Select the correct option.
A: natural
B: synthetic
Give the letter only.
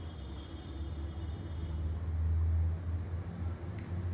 A